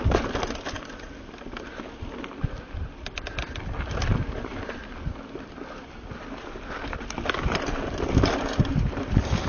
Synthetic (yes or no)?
no